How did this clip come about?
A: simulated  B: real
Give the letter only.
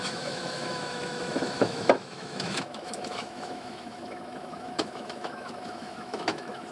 A